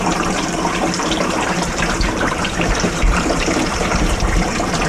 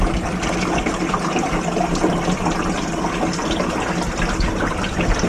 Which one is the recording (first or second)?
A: second